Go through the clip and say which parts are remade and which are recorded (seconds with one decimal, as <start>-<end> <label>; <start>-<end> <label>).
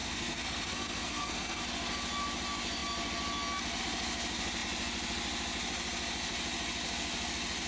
0.0-1.6 remade; 1.6-7.7 recorded